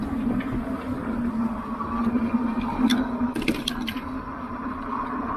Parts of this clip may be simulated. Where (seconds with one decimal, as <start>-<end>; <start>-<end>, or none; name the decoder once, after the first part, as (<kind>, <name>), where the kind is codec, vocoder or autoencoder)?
none

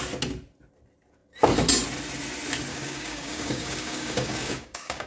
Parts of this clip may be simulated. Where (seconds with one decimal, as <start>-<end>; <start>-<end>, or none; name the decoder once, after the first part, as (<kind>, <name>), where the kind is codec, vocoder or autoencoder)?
2.7-5.1 (codec, DAC)

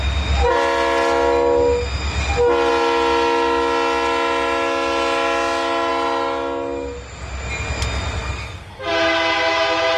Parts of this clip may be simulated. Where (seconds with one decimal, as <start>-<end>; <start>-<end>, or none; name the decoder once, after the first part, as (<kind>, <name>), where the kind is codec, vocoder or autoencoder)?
8.2-8.9 (codec, DAC)

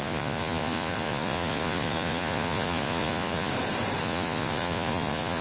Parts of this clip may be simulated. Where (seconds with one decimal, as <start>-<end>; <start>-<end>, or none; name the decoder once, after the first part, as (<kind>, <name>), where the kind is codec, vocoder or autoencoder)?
0.0-3.5 (vocoder, Vocos); 4.0-5.4